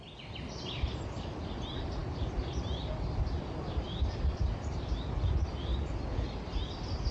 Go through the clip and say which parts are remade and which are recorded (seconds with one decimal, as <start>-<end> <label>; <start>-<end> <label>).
0.0-7.1 recorded